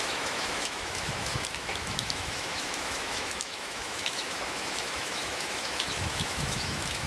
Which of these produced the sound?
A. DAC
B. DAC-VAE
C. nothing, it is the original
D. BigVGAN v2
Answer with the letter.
B